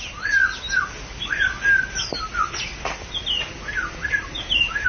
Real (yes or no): yes